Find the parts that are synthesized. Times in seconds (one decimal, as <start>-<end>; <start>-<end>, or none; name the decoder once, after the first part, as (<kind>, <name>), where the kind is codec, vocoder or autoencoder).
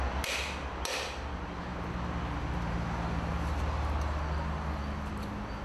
none